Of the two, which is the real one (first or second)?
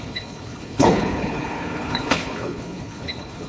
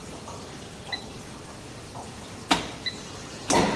second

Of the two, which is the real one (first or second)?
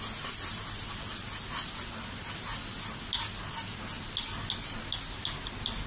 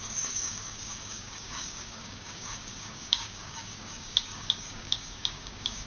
first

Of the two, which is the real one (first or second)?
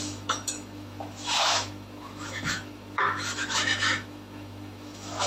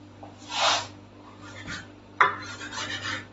second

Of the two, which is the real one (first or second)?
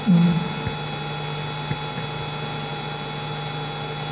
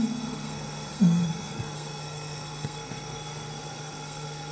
first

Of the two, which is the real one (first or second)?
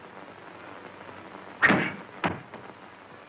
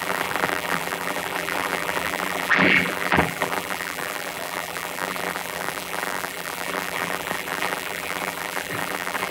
first